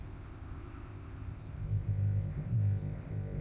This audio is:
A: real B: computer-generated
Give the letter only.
B